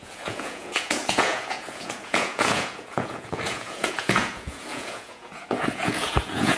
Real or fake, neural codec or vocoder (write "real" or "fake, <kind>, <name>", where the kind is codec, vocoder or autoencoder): fake, vocoder, Vocos